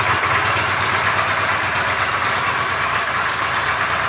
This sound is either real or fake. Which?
real